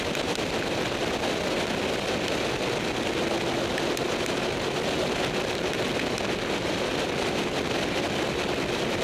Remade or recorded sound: recorded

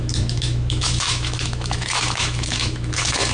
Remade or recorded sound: remade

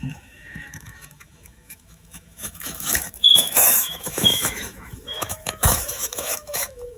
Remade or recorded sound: remade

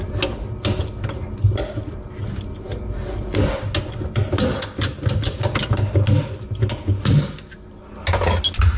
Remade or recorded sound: recorded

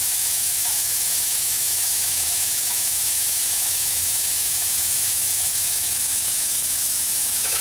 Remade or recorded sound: remade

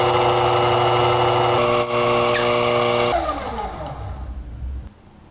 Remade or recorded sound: recorded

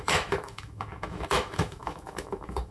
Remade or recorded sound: remade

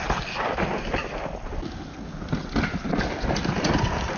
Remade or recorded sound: recorded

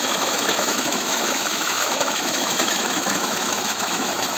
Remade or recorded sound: remade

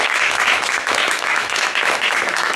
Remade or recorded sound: remade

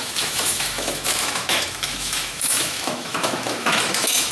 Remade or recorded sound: remade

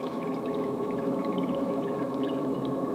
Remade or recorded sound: remade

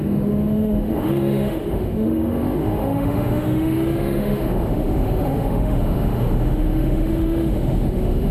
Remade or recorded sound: remade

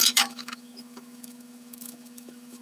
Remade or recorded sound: remade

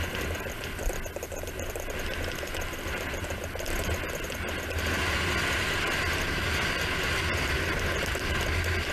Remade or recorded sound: recorded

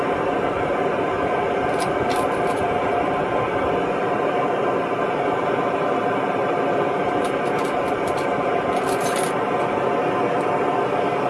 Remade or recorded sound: recorded